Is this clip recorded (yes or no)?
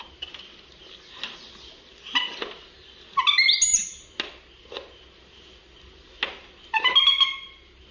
yes